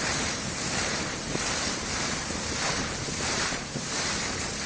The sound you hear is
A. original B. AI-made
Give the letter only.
B